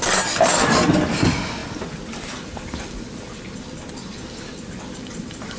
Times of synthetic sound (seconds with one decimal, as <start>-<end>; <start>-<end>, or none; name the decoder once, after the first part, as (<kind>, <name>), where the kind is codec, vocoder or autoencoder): none